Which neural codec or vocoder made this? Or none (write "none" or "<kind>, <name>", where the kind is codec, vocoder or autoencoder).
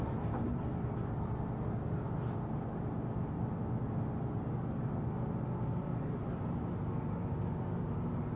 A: none